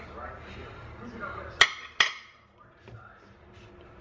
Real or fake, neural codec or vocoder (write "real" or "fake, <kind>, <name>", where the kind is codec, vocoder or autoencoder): real